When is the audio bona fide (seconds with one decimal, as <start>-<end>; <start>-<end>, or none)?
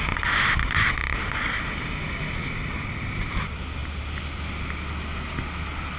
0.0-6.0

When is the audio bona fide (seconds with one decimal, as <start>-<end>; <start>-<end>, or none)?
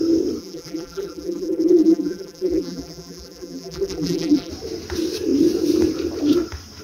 0.0-0.4; 4.5-6.8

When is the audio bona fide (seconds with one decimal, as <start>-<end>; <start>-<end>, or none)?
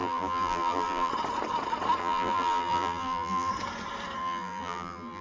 1.1-2.0; 3.5-4.2